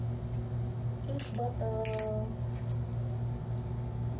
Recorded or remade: recorded